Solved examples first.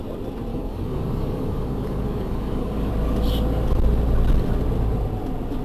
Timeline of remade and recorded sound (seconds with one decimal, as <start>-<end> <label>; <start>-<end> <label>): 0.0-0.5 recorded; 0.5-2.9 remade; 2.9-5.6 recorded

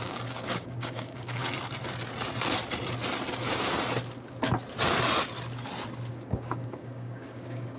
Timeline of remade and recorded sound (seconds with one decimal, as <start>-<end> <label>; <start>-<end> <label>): 0.0-1.4 remade; 1.4-6.1 recorded; 6.1-7.8 remade

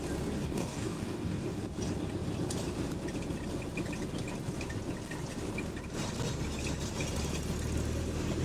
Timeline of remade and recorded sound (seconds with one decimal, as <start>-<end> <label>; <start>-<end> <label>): 0.0-0.4 recorded; 0.4-1.6 remade; 1.6-8.4 recorded

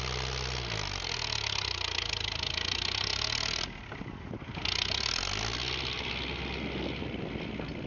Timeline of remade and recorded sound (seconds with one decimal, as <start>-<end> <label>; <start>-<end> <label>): 0.0-7.9 recorded